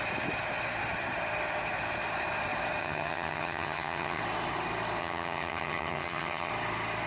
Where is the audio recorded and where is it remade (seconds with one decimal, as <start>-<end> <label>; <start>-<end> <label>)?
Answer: 0.0-2.8 recorded; 2.8-4.2 remade; 4.2-5.0 recorded; 5.0-6.5 remade; 6.5-7.1 recorded